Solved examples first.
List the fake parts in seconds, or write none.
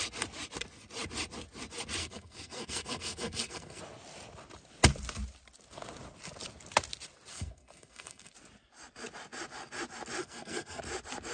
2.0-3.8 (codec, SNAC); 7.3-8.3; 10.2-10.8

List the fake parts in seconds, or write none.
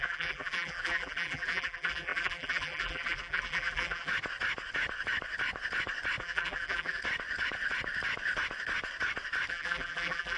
0.0-4.1 (vocoder, BigVGAN v2); 6.2-7.0; 9.5-10.4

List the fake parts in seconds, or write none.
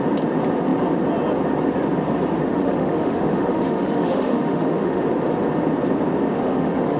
2.5-5.0 (autoencoder, DAC-VAE); 6.3-7.0